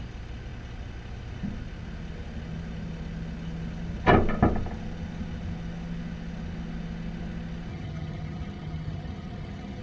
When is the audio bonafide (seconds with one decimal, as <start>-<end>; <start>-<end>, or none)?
0.0-7.7